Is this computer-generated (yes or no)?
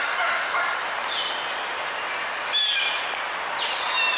no